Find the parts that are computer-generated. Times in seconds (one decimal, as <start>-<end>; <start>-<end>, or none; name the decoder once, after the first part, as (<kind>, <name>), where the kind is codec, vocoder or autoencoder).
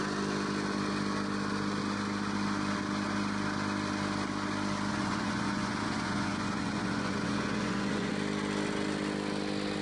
4.9-8.1 (vocoder, Vocos)